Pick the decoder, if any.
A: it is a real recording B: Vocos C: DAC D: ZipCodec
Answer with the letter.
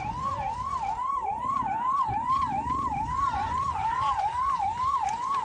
B